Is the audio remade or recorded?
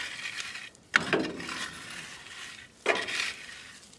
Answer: recorded